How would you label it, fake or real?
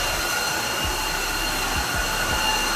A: real